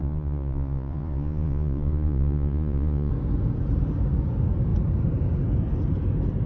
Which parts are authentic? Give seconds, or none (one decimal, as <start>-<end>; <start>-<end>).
3.1-6.5